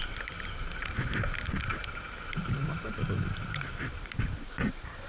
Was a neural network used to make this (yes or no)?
no